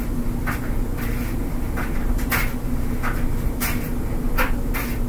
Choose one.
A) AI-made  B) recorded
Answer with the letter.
B